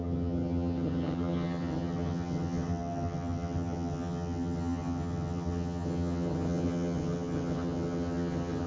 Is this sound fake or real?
fake